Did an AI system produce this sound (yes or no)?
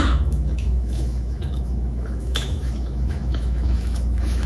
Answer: yes